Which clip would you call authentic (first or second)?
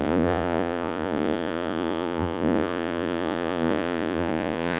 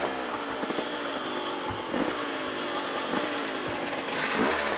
second